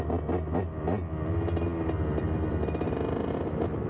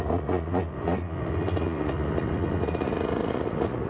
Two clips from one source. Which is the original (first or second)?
first